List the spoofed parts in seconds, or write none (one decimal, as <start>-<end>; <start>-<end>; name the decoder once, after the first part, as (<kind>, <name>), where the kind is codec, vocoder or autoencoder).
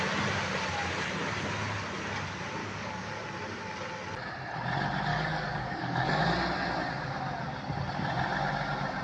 2.6-3.1 (codec, DAC); 5.1-6.2